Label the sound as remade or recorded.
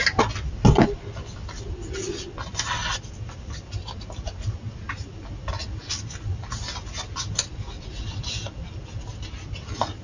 recorded